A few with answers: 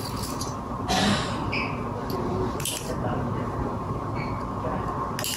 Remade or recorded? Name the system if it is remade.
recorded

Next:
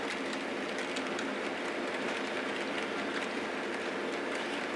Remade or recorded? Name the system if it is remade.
recorded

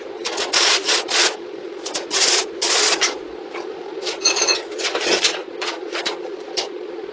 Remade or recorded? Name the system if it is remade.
remade, vocoder, Vocos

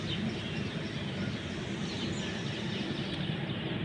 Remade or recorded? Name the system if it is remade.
recorded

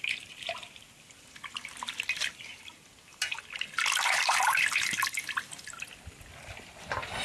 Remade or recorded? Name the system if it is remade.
recorded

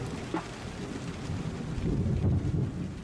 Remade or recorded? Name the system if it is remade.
recorded